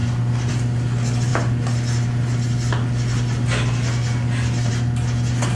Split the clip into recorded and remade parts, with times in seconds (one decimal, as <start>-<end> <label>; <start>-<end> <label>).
0.0-5.6 recorded